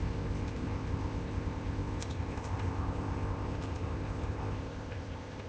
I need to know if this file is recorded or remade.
remade